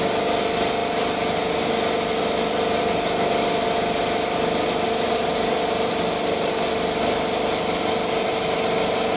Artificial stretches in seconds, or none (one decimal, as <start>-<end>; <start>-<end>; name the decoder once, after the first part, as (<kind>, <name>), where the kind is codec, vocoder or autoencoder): none